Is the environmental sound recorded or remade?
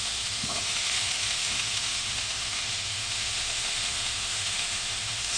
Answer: remade